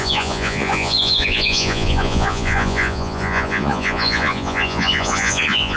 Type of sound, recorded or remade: remade